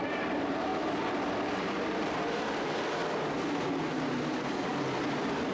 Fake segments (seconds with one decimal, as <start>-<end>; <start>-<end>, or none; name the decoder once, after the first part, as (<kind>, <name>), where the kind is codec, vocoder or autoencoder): 0.0-0.7 (vocoder, BigVGAN v2); 1.5-3.0; 3.7-4.7